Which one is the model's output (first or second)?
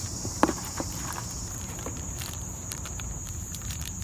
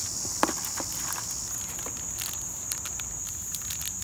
first